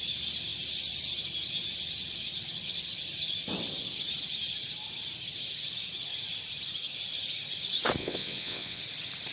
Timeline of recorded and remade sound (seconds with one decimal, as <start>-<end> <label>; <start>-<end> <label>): 0.0-8.0 recorded; 8.0-8.8 remade; 8.8-9.3 recorded